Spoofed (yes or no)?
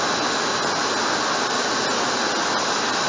no